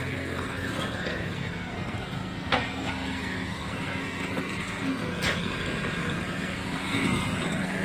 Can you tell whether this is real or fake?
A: fake